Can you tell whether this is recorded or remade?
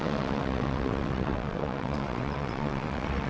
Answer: remade